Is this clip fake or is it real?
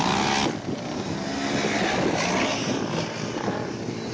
real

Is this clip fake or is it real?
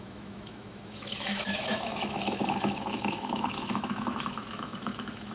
fake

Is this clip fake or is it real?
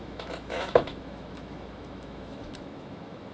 fake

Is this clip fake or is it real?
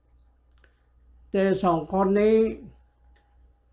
real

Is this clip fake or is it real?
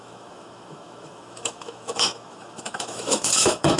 fake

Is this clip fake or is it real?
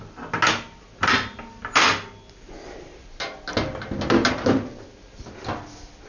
real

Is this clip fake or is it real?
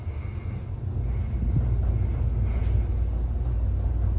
real